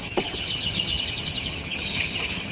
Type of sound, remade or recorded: remade